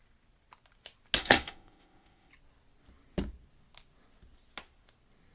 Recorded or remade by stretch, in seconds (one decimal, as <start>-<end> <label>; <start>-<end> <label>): 0.0-1.2 recorded; 1.2-2.3 remade; 2.3-5.3 recorded